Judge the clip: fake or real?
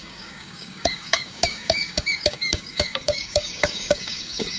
fake